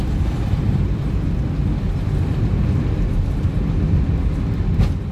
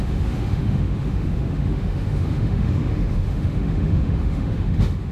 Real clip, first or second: first